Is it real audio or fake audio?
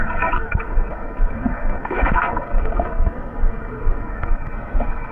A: fake